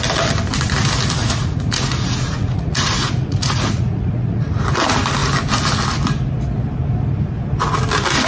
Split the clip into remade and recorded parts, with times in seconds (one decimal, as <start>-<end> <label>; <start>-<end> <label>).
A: 0.0-1.2 recorded; 1.2-4.4 remade; 4.4-8.3 recorded